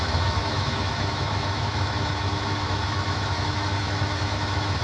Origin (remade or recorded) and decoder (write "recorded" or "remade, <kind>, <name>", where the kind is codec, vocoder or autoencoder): remade, autoencoder, DAC-VAE